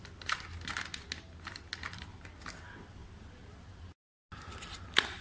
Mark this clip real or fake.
real